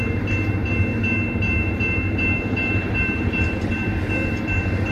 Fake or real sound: fake